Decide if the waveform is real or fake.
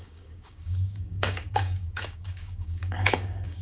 fake